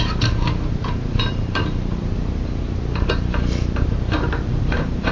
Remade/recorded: remade